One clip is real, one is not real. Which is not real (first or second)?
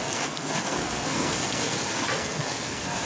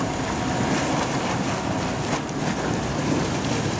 first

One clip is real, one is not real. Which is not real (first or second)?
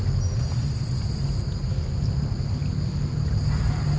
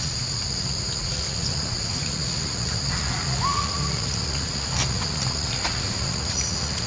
second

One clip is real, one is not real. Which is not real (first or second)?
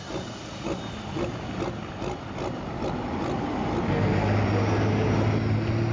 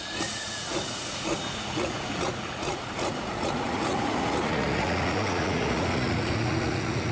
second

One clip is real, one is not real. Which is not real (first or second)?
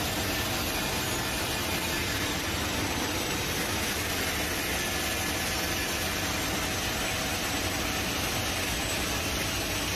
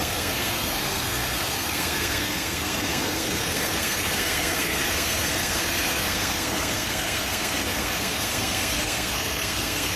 second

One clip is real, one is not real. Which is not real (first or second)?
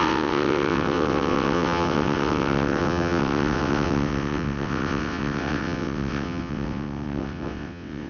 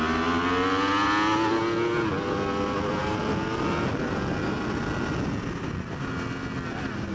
first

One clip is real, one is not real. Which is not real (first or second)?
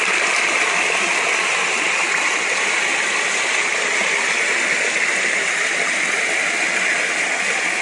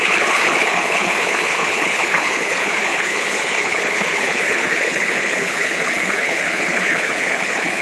second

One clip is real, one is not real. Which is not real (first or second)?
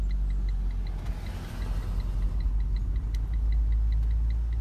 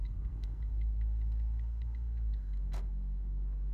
second